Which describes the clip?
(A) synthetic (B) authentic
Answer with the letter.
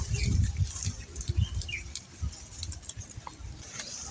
B